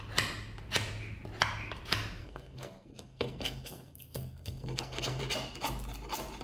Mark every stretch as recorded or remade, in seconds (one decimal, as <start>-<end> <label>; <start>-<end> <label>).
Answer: 0.0-2.2 recorded; 2.2-5.2 remade; 5.2-6.4 recorded